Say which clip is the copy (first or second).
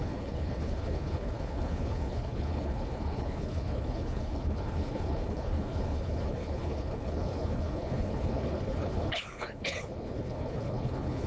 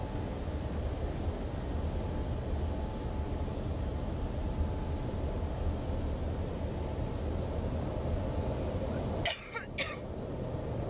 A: first